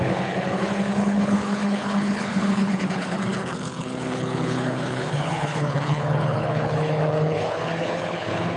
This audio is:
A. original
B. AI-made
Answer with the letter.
B